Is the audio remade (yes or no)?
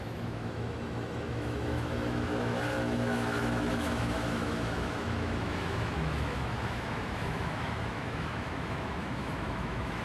yes